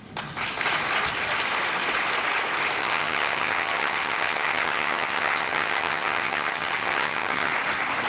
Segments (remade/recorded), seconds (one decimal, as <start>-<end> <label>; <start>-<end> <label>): 0.0-2.8 recorded; 2.8-7.5 remade; 7.5-8.1 recorded